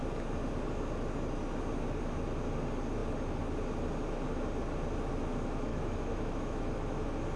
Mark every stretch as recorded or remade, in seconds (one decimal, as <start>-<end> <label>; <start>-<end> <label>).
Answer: 0.0-5.7 recorded; 5.7-6.7 remade; 6.7-7.4 recorded